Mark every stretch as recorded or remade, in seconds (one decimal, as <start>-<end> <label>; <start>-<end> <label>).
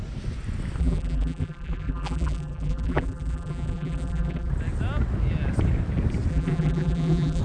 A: 0.0-0.8 recorded; 0.8-4.5 remade; 4.5-6.3 recorded; 6.3-7.4 remade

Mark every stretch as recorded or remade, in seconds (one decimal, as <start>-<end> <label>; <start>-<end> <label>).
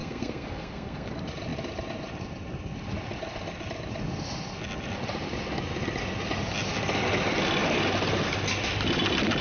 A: 0.0-1.1 remade; 1.1-9.4 recorded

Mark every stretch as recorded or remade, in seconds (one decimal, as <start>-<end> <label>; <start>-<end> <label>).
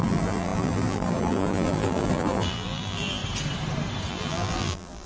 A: 0.0-3.2 remade; 3.2-4.1 recorded; 4.1-5.1 remade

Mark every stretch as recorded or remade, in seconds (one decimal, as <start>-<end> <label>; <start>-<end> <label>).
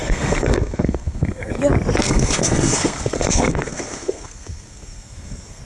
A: 0.0-1.6 remade; 1.6-2.0 recorded; 2.0-5.6 remade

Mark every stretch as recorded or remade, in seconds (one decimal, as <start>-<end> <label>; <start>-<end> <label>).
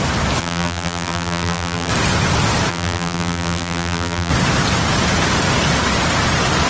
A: 0.0-0.4 recorded; 0.4-1.9 remade; 1.9-2.7 recorded; 2.7-4.3 remade; 4.3-6.7 recorded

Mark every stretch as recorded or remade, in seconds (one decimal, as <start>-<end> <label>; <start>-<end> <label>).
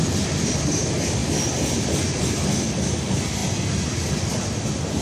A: 0.0-1.2 remade; 1.2-2.0 recorded; 2.0-3.4 remade; 3.4-4.2 recorded; 4.2-5.0 remade